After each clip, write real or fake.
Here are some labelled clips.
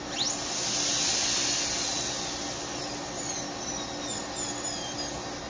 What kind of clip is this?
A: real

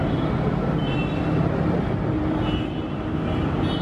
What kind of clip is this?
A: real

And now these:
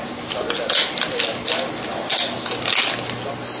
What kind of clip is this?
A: real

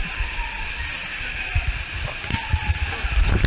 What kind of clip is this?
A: real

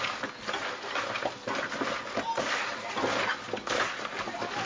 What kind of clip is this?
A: real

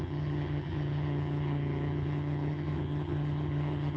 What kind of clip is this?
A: fake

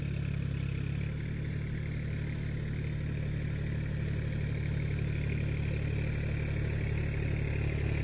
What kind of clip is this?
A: real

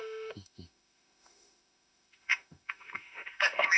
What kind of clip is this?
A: fake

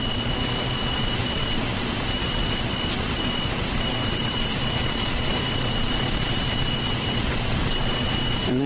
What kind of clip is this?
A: fake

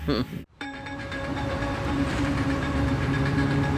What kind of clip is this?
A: fake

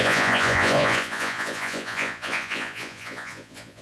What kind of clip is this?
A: fake